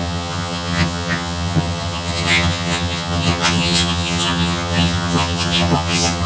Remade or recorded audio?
remade